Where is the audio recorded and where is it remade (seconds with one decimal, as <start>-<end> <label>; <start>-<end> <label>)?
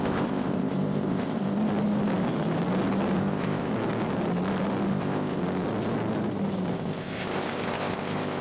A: 0.0-1.6 remade; 1.6-3.2 recorded; 3.2-3.7 remade; 3.7-4.9 recorded; 4.9-5.4 remade; 5.4-6.7 recorded; 6.7-8.4 remade